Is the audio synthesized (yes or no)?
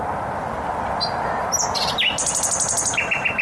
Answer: no